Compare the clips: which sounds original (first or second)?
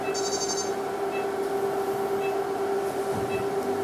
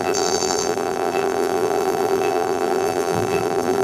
first